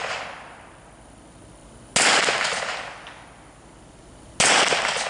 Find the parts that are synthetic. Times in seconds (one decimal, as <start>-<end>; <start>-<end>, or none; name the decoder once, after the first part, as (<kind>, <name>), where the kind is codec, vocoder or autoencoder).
none